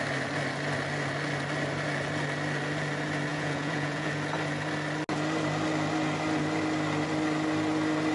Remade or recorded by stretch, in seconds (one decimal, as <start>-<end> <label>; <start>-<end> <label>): 0.0-3.3 recorded; 3.3-4.1 remade; 4.1-8.1 recorded